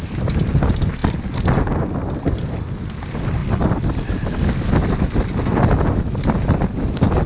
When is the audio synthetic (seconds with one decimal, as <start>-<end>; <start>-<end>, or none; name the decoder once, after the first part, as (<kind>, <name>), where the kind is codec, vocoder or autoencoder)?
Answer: none